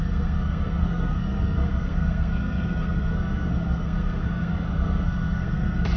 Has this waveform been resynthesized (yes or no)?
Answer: yes